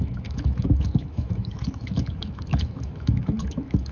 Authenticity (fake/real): fake